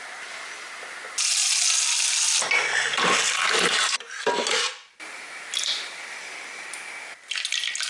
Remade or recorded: recorded